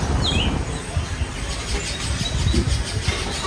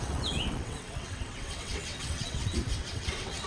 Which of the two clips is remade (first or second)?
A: second